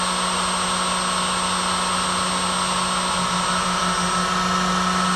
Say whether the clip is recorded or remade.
recorded